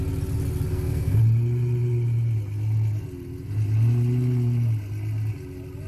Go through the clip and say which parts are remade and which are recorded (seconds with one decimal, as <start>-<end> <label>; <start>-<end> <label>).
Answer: 0.0-0.7 recorded; 0.7-1.2 remade; 1.2-5.9 recorded